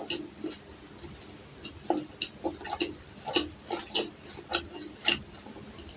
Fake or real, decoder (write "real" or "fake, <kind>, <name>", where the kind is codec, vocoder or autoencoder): real